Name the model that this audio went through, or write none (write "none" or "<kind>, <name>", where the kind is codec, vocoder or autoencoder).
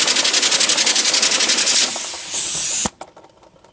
none